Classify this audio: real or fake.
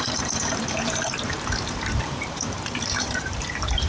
fake